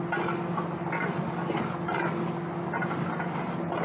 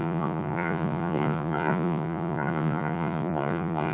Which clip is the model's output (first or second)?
second